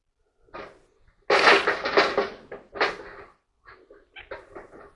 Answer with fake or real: real